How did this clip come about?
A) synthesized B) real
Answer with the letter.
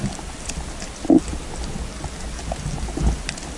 B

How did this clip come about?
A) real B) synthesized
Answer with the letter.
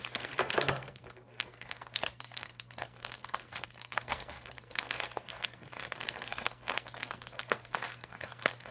B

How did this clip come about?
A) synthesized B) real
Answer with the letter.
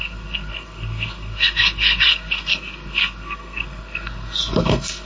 A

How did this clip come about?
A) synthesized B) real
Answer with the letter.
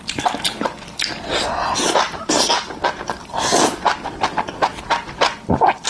B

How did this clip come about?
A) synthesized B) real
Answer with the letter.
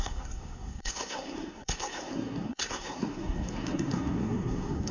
A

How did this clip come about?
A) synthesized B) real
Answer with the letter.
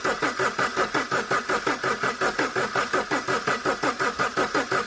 B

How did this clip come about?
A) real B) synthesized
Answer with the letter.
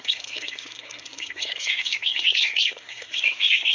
B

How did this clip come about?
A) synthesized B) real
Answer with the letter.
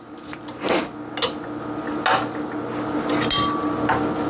B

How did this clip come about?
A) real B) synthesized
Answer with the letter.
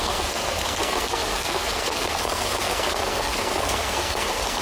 B